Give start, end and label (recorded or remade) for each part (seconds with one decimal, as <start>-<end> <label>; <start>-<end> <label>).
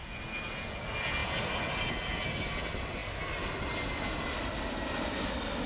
0.0-5.7 recorded